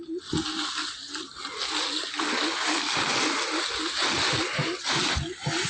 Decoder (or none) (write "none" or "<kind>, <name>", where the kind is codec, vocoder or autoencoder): none